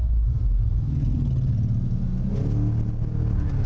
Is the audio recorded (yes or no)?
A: yes